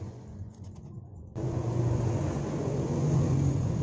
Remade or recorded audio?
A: remade